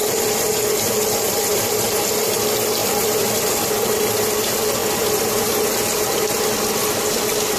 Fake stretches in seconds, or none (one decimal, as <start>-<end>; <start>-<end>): 0.0-1.7